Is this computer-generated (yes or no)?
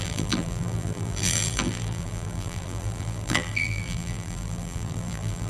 yes